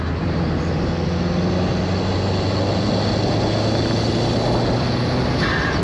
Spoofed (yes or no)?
no